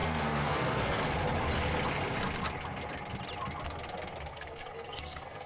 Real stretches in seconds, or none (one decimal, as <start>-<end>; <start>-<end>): 1.0-4.3